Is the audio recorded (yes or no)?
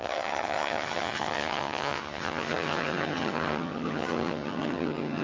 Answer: no